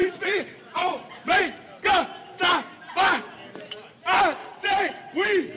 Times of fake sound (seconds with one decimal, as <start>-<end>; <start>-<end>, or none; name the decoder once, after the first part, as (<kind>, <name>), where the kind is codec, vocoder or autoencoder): 0.0-1.1 (vocoder, WaveNeXt); 4.4-5.6